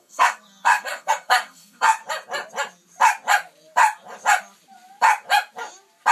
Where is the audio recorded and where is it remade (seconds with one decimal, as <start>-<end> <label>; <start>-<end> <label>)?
0.0-2.0 remade; 2.0-6.1 recorded